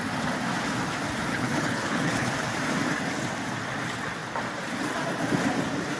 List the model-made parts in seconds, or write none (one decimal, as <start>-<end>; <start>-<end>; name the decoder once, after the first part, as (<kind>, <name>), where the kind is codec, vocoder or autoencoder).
1.3-2.3 (codec, HILCodec)